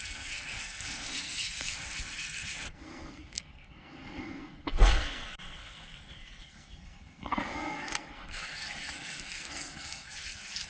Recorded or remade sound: remade